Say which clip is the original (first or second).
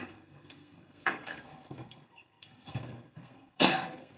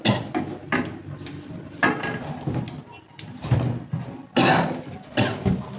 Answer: second